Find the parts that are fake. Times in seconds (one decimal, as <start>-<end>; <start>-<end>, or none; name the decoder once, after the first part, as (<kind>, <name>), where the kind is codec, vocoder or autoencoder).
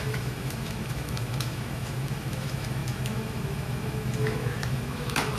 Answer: 0.0-5.4 (autoencoder, DAC-VAE)